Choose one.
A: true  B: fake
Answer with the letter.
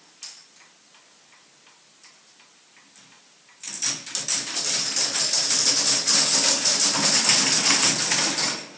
A